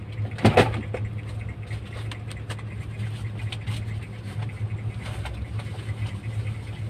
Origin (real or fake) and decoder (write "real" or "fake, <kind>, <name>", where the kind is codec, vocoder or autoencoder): real